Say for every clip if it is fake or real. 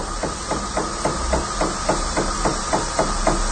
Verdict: real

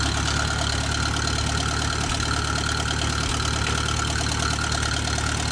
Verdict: real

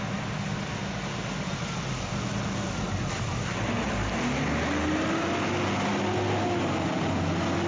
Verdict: real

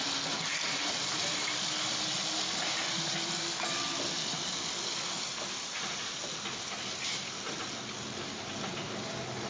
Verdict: real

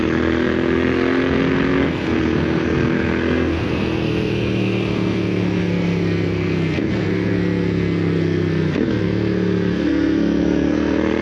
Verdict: fake